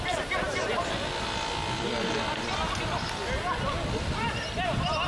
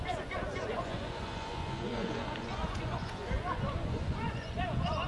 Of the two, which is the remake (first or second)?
second